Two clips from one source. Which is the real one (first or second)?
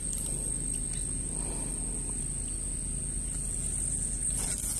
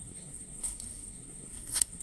first